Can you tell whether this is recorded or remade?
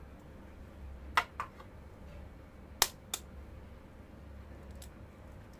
recorded